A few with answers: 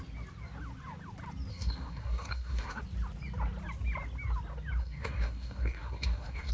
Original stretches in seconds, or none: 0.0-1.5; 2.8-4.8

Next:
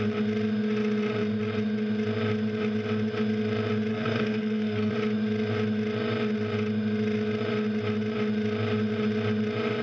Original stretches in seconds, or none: 0.0-3.9; 4.9-9.8

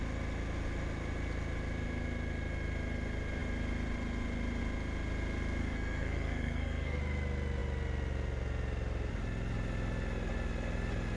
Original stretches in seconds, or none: 0.0-5.6; 7.0-11.2

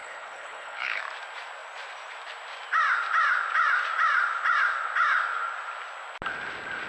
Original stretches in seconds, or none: 1.0-6.9

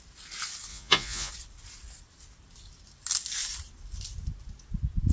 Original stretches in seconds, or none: 0.0-0.7; 1.3-5.1

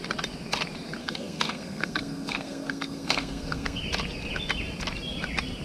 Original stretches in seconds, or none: 0.0-1.0; 3.8-5.6

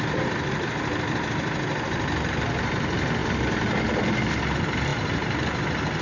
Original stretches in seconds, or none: 0.0-3.2; 4.4-6.0

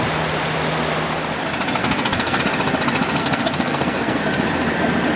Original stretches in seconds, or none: 0.0-1.8; 2.4-3.2; 4.2-5.2